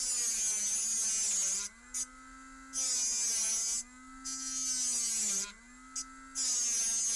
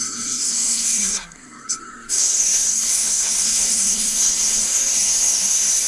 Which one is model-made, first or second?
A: second